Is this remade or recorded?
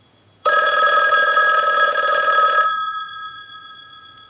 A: remade